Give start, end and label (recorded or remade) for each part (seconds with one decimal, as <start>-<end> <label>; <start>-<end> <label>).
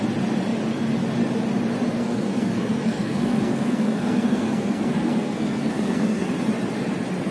0.0-1.9 recorded; 1.9-6.3 remade; 6.3-7.3 recorded